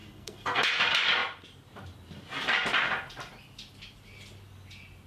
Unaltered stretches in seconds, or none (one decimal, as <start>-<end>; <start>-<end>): 0.7-5.1